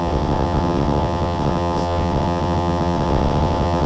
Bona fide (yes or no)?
no